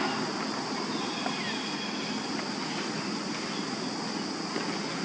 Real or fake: real